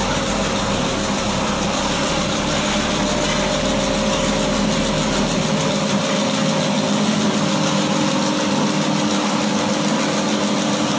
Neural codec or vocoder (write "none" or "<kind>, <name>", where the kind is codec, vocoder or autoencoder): none